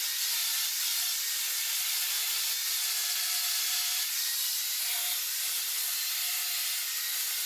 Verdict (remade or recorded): remade